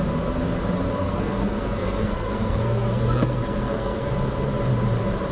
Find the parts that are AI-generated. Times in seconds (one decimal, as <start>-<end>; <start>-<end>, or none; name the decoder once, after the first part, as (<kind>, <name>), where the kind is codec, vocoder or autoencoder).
1.0-4.1 (codec, SNAC)